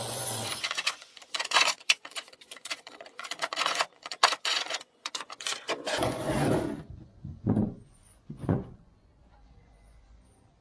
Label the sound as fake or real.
fake